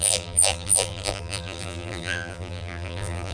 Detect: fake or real fake